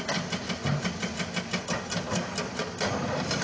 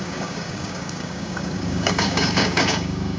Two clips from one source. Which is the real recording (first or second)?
first